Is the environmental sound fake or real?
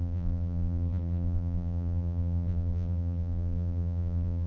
fake